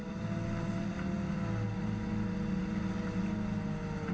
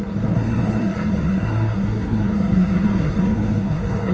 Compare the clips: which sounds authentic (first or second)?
first